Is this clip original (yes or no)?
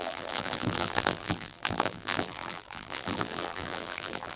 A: no